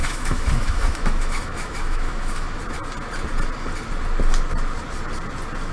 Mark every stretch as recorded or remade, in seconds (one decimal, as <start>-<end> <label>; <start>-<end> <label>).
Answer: 0.0-2.6 remade; 2.6-5.7 recorded